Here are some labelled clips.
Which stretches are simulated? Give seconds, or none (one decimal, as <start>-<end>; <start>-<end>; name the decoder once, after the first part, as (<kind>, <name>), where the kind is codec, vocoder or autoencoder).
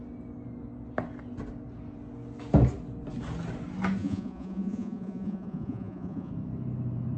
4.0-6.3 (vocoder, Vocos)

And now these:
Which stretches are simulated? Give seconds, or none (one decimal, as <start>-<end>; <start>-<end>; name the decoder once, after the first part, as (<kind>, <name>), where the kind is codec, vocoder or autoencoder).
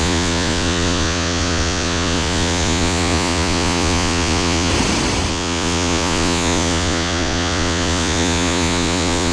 0.0-4.7 (vocoder, Vocos); 5.3-9.3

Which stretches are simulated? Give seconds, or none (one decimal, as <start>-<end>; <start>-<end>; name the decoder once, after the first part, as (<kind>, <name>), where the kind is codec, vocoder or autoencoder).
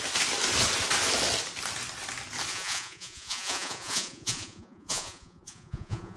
2.5-6.2 (vocoder, Vocos)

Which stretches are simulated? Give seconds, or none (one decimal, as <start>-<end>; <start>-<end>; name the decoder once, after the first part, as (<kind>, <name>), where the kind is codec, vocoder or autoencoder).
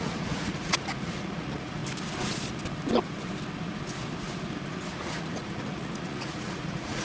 0.0-1.8 (vocoder, Vocos); 4.9-7.0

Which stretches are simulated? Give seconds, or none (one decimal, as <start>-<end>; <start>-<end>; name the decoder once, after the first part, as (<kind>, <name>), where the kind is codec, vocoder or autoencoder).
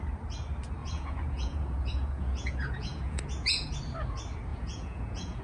0.8-3.8 (vocoder, Vocos); 4.5-5.4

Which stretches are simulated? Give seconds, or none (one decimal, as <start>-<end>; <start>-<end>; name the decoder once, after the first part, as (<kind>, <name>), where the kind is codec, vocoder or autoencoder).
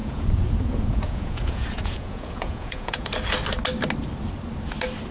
0.0-3.1 (vocoder, Vocos)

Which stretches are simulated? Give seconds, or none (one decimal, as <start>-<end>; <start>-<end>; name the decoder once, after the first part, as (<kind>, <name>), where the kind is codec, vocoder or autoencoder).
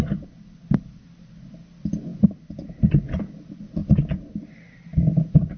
none